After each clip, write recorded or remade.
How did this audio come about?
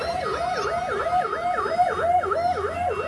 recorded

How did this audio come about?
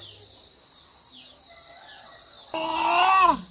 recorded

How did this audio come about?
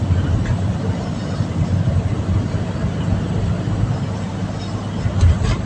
recorded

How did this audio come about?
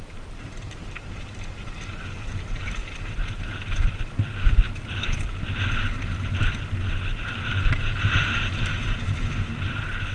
recorded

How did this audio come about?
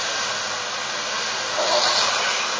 recorded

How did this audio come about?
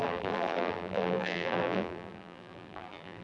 remade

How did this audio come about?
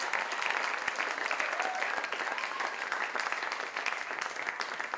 recorded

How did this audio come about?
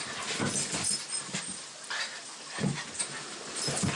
recorded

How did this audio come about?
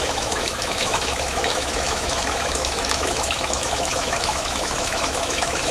remade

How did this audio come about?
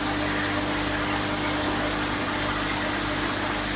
recorded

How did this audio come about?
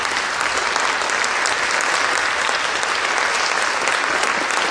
recorded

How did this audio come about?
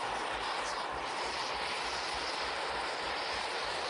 recorded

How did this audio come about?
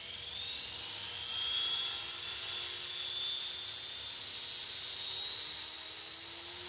recorded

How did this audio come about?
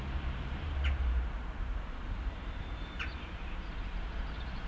remade